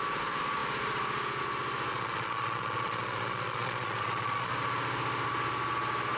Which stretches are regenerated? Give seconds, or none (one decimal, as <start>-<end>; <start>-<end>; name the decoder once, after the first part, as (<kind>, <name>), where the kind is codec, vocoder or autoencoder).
1.9-4.5 (vocoder, Vocos)